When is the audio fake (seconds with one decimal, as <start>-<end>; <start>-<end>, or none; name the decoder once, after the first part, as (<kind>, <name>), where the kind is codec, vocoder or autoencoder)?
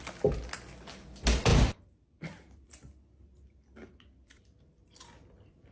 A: none